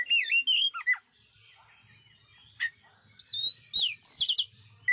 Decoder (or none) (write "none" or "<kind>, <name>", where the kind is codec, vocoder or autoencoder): none